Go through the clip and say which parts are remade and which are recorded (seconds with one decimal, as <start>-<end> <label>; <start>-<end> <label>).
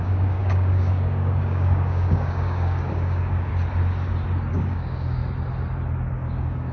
0.0-3.5 remade; 3.5-4.5 recorded; 4.5-5.2 remade; 5.2-6.1 recorded; 6.1-6.7 remade